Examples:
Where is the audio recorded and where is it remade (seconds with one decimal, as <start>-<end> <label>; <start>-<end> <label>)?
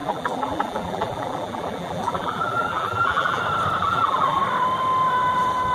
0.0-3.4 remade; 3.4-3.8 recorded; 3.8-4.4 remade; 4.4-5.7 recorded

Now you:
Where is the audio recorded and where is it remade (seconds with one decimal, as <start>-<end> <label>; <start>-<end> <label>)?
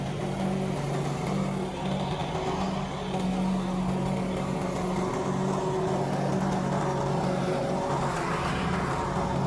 0.0-9.5 recorded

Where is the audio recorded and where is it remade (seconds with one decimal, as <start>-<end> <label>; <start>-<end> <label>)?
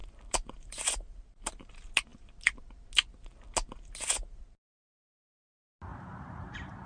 0.0-1.7 remade; 1.7-5.9 recorded; 5.9-6.9 remade